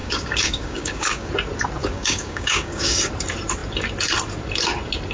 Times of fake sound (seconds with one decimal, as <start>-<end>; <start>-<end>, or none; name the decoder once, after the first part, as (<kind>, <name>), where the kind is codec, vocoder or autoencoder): 0.0-1.3 (codec, DAC); 1.8-3.1